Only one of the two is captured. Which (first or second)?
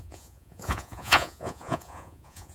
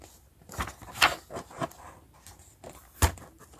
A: second